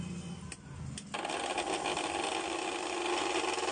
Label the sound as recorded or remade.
recorded